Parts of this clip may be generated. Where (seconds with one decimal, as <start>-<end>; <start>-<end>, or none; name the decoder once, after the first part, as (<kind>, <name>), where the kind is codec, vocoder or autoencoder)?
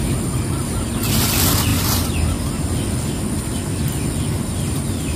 none